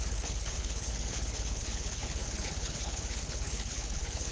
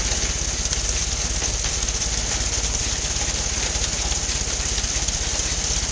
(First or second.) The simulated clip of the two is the first